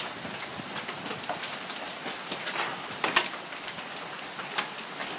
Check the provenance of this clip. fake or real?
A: real